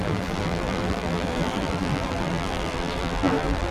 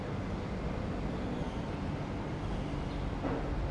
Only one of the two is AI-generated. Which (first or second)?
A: first